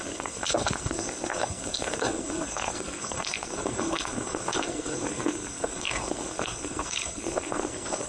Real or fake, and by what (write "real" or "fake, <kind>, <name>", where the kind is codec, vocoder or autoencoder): fake, codec, SNAC